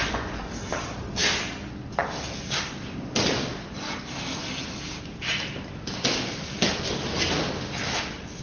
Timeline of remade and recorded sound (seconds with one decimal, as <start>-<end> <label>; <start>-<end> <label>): 0.0-0.5 remade; 0.5-8.4 recorded